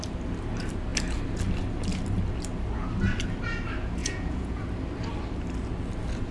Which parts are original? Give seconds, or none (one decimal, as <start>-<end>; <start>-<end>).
0.0-4.0; 4.6-6.3